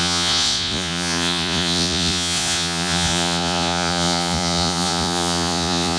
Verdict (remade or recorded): remade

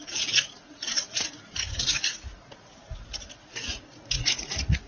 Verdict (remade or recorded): remade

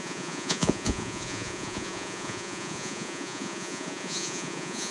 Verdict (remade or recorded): remade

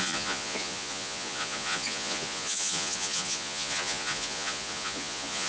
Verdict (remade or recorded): remade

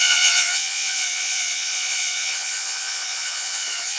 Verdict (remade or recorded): remade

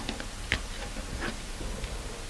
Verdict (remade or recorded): recorded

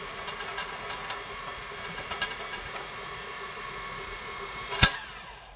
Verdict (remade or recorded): remade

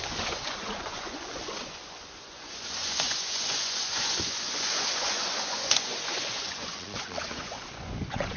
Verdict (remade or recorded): remade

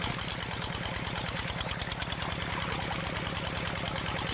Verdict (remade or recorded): recorded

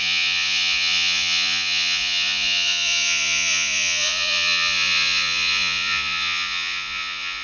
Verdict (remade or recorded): remade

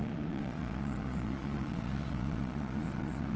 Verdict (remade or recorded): remade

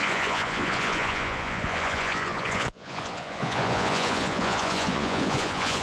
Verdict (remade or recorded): remade